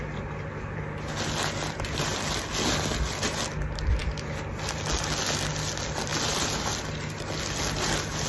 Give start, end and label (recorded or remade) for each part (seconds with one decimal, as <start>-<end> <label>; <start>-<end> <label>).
0.0-8.3 recorded